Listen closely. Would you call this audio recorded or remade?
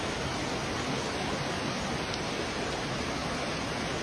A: recorded